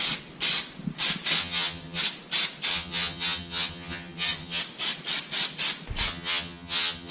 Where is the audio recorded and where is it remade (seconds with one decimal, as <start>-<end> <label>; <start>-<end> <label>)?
0.0-1.4 recorded; 1.4-2.0 remade; 2.0-2.7 recorded; 2.7-4.6 remade; 4.6-6.1 recorded; 6.1-7.1 remade